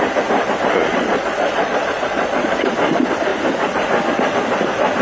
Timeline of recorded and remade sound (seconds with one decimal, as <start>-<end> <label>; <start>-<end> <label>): 0.0-0.9 recorded; 0.9-2.6 remade; 2.6-5.0 recorded